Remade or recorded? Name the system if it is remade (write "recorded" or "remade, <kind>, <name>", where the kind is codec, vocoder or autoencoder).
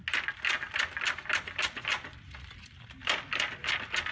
recorded